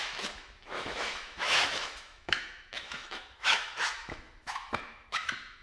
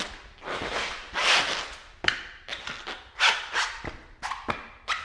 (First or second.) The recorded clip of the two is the second